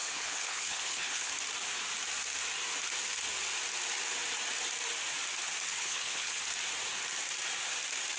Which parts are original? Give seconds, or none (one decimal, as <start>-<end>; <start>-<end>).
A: 1.3-5.8; 6.4-8.2